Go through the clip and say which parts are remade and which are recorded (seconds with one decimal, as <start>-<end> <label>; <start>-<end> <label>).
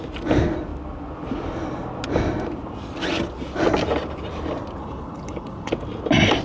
0.0-4.8 recorded; 4.8-5.7 remade; 5.7-6.4 recorded